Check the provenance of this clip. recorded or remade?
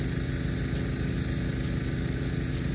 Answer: recorded